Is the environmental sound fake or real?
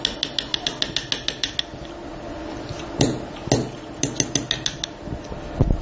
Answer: real